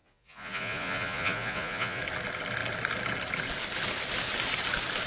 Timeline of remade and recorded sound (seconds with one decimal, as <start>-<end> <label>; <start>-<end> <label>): 0.0-2.0 remade; 2.0-5.1 recorded